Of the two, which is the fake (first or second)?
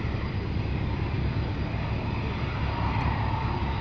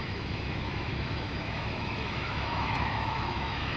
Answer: second